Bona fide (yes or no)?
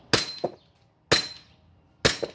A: yes